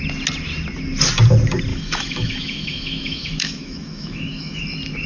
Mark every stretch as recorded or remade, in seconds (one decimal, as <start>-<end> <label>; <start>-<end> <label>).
0.0-1.7 recorded; 1.7-4.6 remade; 4.6-5.1 recorded